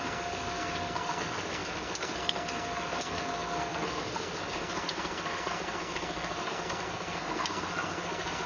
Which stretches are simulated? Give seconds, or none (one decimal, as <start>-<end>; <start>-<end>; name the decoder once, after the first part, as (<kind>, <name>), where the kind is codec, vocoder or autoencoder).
0.0-8.5 (codec, SNAC)